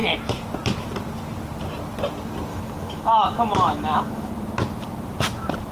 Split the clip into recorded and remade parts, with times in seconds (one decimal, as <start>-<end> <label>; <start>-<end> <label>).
0.0-2.5 recorded; 2.5-4.3 remade; 4.3-5.7 recorded